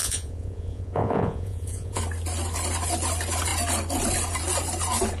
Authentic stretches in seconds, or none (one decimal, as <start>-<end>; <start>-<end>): 2.0-5.2